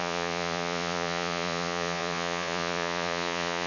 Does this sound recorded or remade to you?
remade